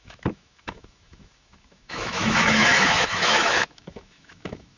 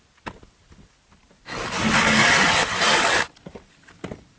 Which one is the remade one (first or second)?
first